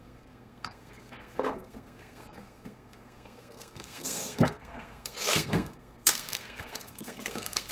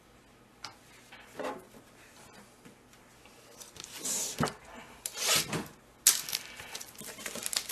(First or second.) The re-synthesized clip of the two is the first